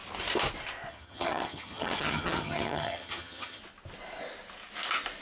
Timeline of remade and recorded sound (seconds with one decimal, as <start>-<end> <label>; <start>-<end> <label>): 0.0-0.9 recorded; 0.9-3.6 remade; 3.6-5.2 recorded